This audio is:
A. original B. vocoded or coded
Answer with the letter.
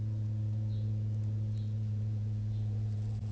B